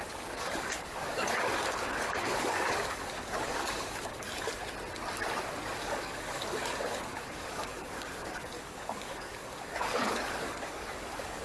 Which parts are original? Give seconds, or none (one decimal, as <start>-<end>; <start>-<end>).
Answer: 4.6-5.8